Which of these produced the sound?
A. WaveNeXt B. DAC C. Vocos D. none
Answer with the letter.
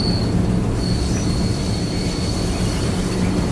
D